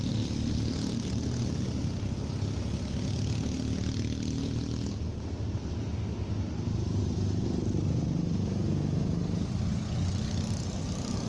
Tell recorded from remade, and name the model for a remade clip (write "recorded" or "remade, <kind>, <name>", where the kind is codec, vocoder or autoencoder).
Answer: recorded